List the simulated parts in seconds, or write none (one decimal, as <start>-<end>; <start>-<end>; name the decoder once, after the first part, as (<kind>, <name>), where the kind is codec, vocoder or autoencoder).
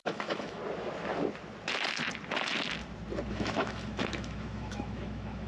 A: 0.0-0.6 (autoencoder, DAC-VAE); 3.3-5.5